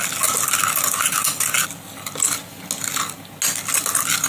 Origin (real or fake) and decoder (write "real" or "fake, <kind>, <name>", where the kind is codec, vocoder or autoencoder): real